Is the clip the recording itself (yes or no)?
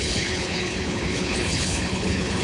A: no